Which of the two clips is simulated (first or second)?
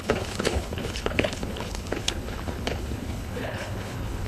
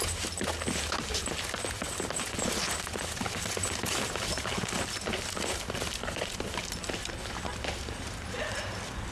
first